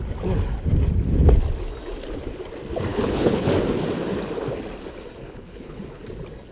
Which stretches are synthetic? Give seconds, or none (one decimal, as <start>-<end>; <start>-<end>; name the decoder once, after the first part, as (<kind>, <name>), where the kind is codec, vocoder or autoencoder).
2.9-3.5 (codec, HILCodec); 5.2-6.0